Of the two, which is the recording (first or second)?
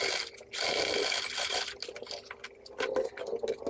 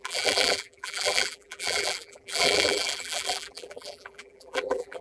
first